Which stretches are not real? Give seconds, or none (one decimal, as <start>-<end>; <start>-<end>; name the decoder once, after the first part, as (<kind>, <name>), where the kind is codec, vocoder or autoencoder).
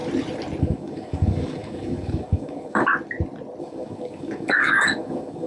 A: 0.6-2.9 (codec, DAC); 3.6-5.5